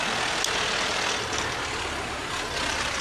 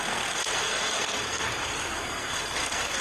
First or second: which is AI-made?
second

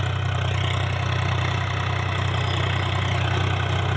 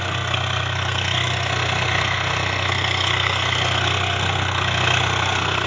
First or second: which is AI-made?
second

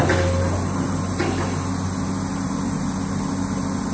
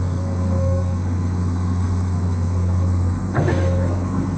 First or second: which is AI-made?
second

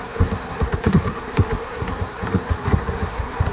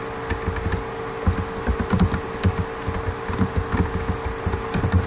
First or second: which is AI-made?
first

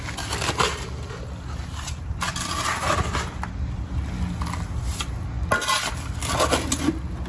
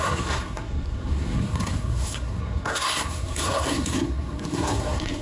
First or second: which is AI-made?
second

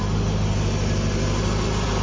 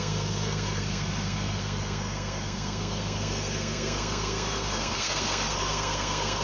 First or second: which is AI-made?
second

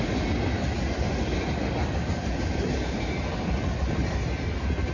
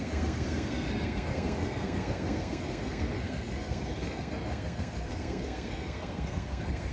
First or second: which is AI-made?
second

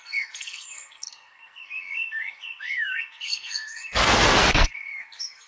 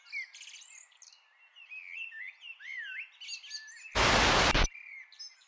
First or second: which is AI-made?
first